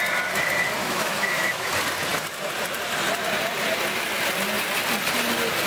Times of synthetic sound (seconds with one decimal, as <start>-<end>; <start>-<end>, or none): 0.8-1.7